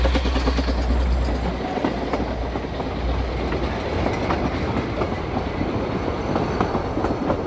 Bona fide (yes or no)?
yes